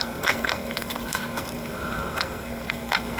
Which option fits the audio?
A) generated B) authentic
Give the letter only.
A